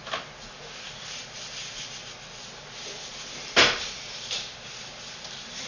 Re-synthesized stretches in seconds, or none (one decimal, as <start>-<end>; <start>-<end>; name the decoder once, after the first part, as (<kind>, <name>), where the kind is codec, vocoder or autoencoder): 1.2-2.0 (vocoder, BigVGAN v2); 3.8-5.7